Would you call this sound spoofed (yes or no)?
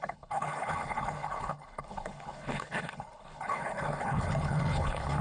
yes